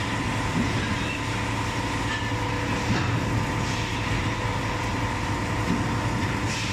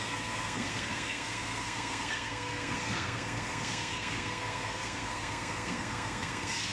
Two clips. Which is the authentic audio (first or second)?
first